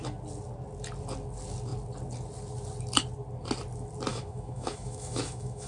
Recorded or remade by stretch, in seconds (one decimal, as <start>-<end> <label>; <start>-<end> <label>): 0.0-4.1 recorded; 4.1-5.7 remade